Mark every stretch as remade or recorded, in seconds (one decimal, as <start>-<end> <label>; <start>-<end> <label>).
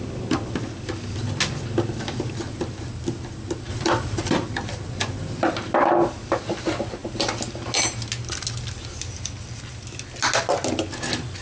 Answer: 0.0-3.7 recorded; 3.7-4.3 remade; 4.3-11.4 recorded